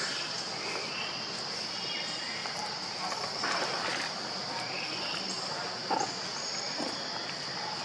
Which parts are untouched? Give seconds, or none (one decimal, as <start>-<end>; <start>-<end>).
0.0-2.4; 3.8-7.8